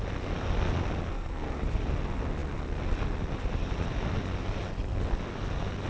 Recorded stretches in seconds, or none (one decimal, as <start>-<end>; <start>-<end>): 0.0-1.1; 1.6-5.9